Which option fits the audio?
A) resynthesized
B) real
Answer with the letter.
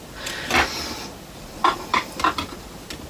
B